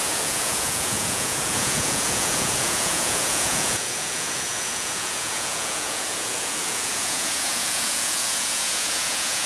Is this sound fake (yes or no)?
yes